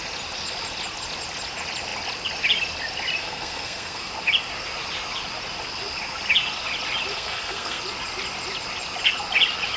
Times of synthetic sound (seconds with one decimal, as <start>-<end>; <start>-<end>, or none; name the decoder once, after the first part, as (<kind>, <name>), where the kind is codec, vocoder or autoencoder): 3.2-4.1 (codec, SNAC); 7.1-7.8